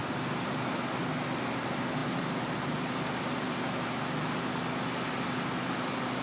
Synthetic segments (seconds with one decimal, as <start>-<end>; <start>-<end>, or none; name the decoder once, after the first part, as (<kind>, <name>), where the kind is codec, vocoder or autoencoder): none